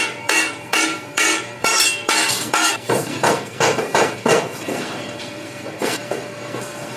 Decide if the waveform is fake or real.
fake